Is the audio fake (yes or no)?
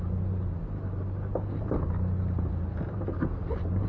no